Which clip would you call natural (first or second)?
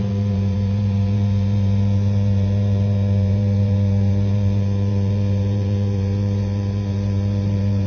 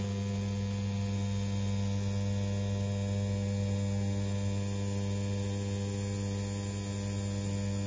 second